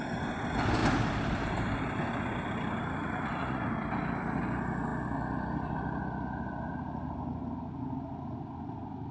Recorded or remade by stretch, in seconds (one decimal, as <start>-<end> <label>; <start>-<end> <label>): 0.0-3.0 recorded; 3.0-3.6 remade; 3.6-9.1 recorded